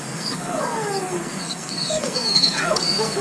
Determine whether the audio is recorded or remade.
remade